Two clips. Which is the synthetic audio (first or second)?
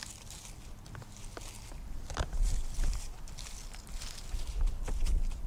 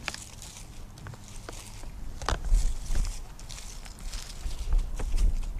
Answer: first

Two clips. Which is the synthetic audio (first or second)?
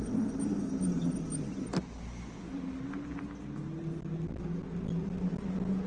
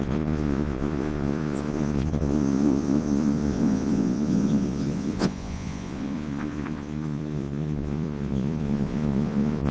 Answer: second